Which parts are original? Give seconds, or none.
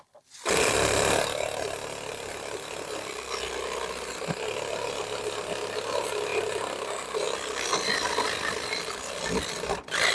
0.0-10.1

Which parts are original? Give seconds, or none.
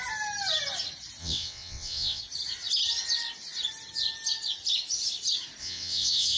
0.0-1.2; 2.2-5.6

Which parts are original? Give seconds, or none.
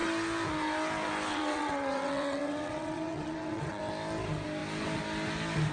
0.0-1.3; 3.8-5.7